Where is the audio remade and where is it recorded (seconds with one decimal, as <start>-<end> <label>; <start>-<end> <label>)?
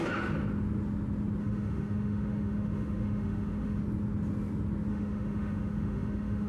0.0-1.4 recorded; 1.4-3.8 remade; 3.8-4.9 recorded; 4.9-6.5 remade